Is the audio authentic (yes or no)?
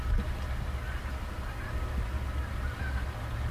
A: yes